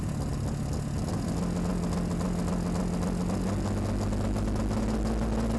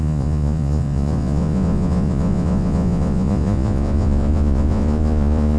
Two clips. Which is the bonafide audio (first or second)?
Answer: first